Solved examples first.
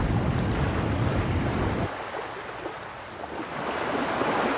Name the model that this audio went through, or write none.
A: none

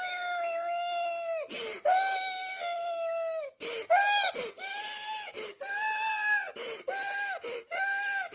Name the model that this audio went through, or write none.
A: none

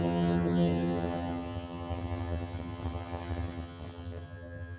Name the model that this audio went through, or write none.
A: vocoder, HiFi-GAN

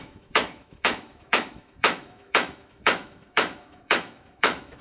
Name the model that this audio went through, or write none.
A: autoencoder, DAC-VAE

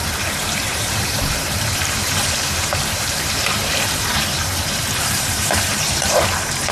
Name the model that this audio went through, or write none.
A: vocoder, BigVGAN v2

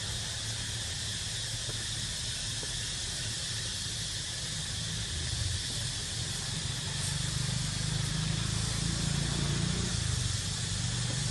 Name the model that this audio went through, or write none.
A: none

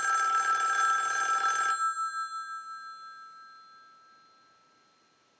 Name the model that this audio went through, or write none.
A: none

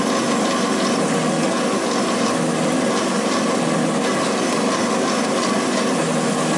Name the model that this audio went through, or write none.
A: none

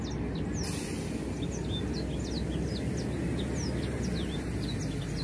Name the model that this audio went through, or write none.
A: none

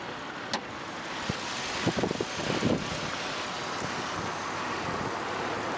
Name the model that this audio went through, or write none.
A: none